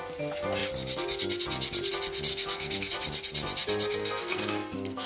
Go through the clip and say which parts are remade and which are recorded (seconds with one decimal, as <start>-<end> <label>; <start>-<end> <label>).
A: 0.0-2.3 recorded; 2.3-2.9 remade; 2.9-4.0 recorded; 4.0-5.1 remade